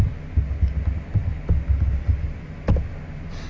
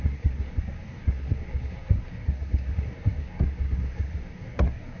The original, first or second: first